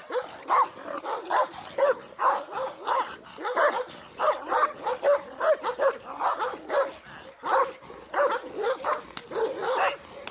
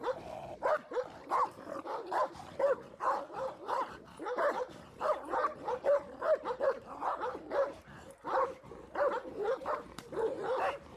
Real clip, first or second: first